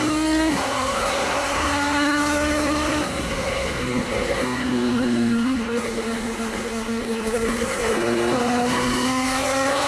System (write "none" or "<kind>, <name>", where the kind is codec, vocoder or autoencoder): codec, SNAC